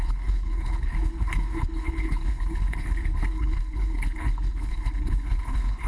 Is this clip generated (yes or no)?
yes